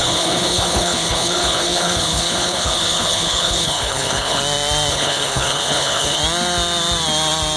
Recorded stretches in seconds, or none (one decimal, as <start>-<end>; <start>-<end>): 4.4-4.9; 6.2-7.6